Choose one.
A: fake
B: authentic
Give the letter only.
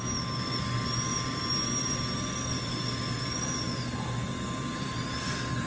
B